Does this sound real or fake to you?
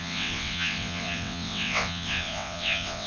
fake